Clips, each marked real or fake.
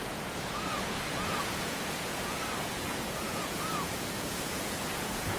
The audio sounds fake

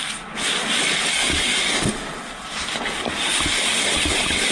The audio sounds real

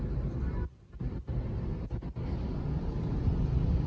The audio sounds real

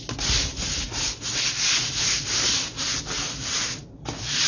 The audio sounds real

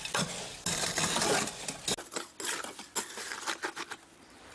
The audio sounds real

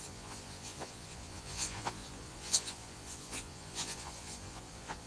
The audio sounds fake